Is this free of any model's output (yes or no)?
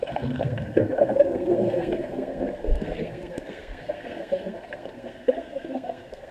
no